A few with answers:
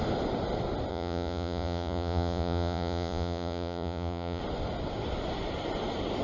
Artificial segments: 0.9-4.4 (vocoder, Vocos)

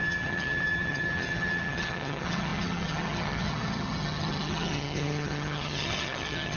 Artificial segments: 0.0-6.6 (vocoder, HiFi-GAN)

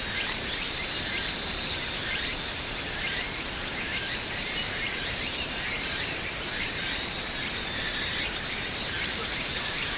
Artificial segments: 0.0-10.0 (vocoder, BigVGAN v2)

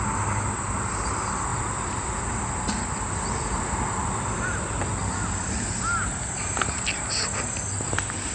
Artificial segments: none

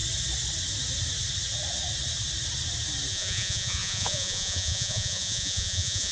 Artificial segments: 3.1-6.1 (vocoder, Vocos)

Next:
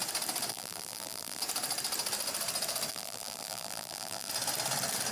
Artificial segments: 0.5-1.4 (vocoder, BigVGAN v2); 2.9-4.3

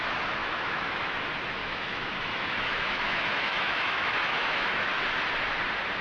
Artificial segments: 0.4-1.2 (autoencoder, DAC-VAE); 1.6-4.9